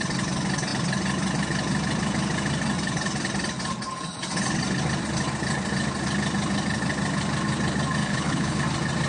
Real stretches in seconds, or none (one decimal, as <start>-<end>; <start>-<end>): 0.0-8.0; 8.6-9.1